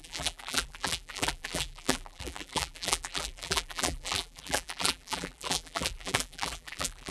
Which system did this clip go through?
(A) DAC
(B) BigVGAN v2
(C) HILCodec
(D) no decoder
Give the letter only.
B